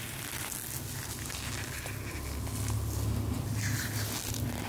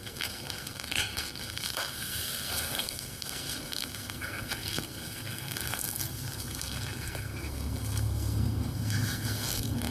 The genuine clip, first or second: first